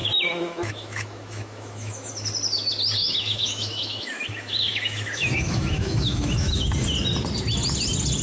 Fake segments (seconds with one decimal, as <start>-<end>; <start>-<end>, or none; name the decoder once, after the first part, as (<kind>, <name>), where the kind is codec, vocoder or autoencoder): 0.0-2.1 (autoencoder, DAC-VAE); 3.0-6.7